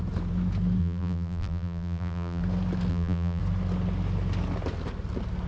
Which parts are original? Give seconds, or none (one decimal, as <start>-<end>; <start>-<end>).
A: 0.0-0.8; 2.4-2.9; 3.4-5.5